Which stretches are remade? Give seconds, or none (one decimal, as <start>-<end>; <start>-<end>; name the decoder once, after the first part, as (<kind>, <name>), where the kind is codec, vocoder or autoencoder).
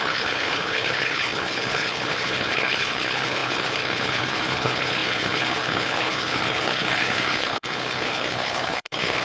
0.0-9.2 (codec, HILCodec)